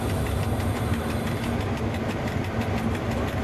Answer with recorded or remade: recorded